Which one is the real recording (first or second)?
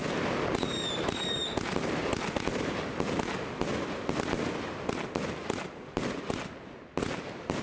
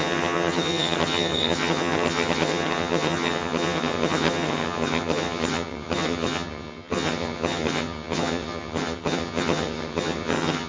first